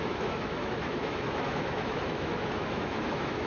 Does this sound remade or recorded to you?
remade